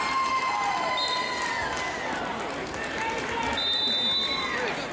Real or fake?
real